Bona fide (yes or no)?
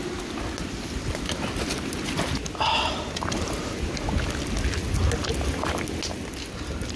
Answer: yes